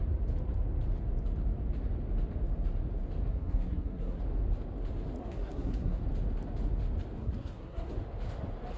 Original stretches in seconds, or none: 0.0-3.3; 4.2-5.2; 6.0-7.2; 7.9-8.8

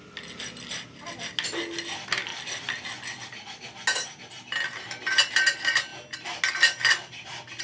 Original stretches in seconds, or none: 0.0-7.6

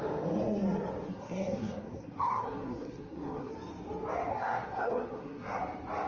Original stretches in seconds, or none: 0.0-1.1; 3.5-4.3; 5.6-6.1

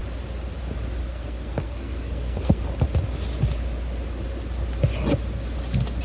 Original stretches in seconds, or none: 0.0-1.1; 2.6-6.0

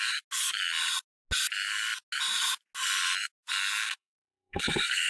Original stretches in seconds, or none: 0.0-3.8

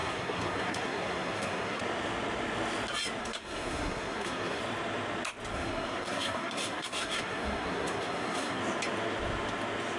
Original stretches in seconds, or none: 1.8-3.2; 4.6-5.5; 8.6-10.0

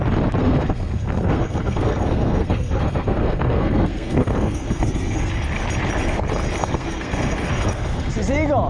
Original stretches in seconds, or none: 0.0-0.4; 5.3-6.6; 8.1-8.7